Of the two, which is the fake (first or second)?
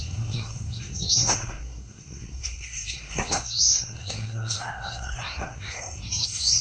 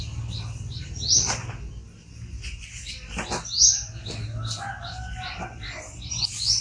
first